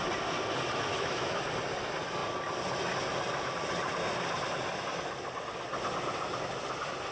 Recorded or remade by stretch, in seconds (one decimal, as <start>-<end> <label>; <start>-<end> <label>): 0.0-0.9 recorded; 0.9-1.4 remade; 1.4-7.1 recorded